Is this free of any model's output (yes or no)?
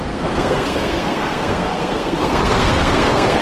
no